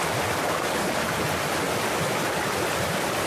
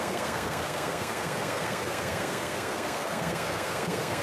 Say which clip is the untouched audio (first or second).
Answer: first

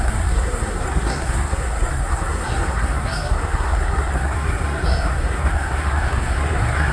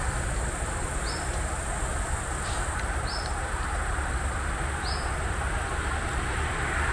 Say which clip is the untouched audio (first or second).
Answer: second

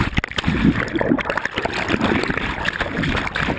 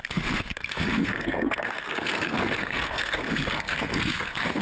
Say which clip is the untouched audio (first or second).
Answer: first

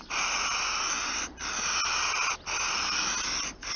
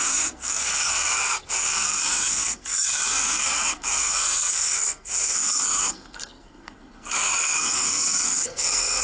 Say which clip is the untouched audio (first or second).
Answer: first